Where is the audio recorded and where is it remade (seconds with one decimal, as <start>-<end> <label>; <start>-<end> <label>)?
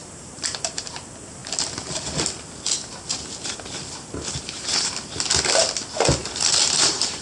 0.0-0.9 remade; 0.9-6.2 recorded; 6.2-7.2 remade